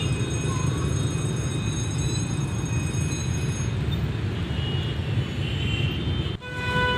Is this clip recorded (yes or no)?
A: yes